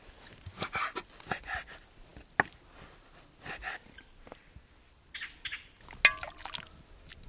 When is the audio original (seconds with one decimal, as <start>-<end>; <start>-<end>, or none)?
0.0-7.3